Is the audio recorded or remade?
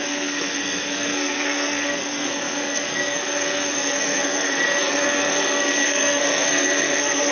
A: remade